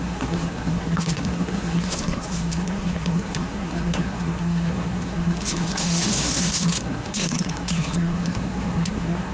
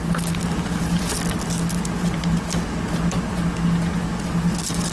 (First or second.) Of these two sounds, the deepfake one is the first